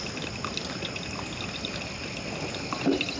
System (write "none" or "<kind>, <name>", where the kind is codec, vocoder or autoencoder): none